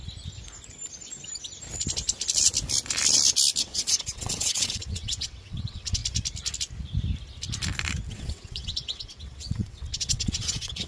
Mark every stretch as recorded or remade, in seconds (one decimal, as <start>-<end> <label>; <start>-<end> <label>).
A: 0.0-3.6 recorded; 3.6-6.0 remade; 6.0-8.1 recorded; 8.1-10.9 remade